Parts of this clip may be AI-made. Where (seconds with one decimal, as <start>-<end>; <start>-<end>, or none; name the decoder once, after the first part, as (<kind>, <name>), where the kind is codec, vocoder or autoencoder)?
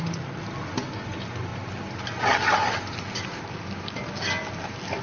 none